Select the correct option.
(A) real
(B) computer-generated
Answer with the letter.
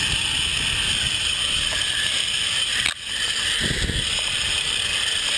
A